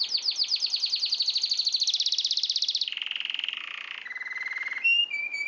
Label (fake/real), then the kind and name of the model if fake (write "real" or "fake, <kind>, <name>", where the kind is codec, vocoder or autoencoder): real